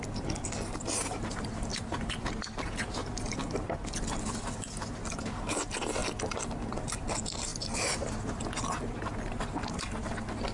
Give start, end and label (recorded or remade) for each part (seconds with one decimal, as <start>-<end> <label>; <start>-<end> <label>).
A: 0.0-1.7 recorded; 1.7-2.3 remade; 2.3-7.5 recorded; 7.5-8.4 remade; 8.4-10.5 recorded